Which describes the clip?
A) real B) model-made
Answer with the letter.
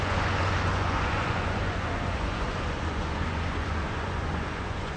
B